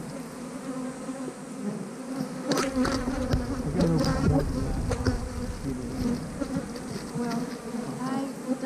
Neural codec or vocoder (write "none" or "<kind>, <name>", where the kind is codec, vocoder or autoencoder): none